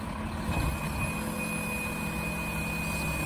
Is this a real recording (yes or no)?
yes